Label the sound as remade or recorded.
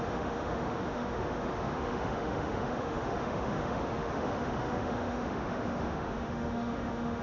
remade